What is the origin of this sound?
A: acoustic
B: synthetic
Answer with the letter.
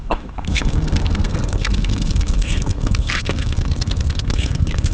B